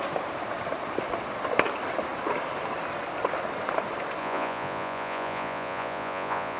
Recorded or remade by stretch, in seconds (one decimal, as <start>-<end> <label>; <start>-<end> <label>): 0.0-4.2 recorded; 4.2-6.6 remade